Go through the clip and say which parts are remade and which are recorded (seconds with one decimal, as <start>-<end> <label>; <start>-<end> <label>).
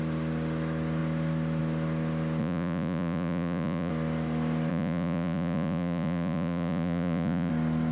0.0-2.4 recorded; 2.4-3.9 remade; 3.9-4.7 recorded; 4.7-7.5 remade; 7.5-7.9 recorded